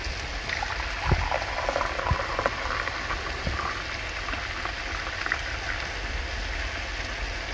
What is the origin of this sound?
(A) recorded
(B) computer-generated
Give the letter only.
A